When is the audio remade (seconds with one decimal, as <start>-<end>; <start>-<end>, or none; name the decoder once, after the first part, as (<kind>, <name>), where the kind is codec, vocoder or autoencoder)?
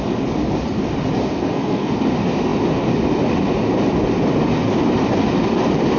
1.2-1.9 (codec, SNAC)